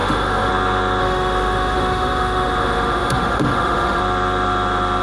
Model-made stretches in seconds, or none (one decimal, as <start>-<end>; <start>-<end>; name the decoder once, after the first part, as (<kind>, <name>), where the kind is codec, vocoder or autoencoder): 0.0-0.5 (autoencoder, DAC-VAE); 1.0-4.0